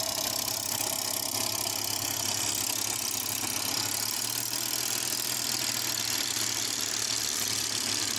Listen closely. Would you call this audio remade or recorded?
recorded